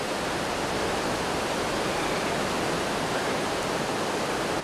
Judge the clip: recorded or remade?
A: recorded